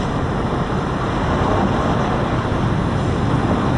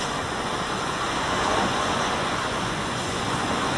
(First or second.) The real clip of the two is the first